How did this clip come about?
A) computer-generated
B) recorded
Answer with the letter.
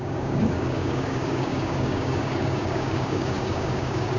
A